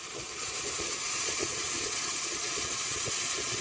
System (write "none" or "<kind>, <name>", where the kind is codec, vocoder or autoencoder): vocoder, Vocos